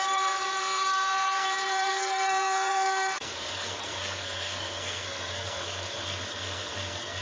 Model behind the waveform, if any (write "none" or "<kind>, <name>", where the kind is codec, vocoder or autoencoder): codec, SNAC